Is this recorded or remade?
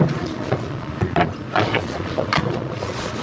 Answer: remade